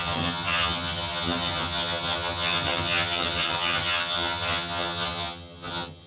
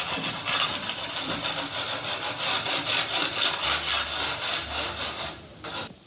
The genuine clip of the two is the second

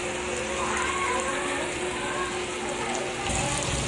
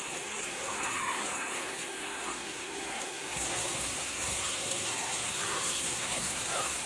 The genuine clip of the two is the first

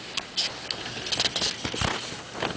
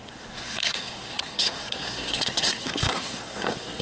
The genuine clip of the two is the first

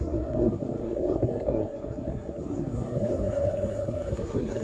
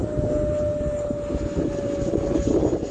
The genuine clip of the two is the second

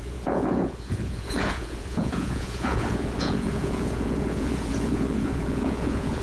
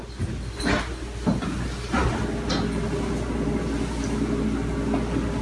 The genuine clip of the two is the second